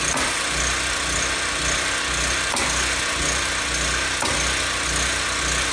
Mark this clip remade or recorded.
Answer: recorded